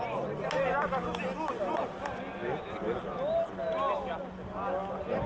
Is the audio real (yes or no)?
yes